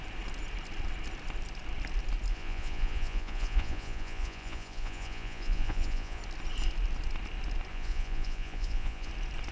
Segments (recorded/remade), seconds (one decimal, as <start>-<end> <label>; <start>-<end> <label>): 0.0-2.3 recorded; 2.3-6.2 remade; 6.2-7.7 recorded; 7.7-9.1 remade; 9.1-9.5 recorded